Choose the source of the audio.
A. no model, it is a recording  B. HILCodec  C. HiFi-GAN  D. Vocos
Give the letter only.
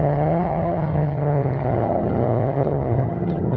C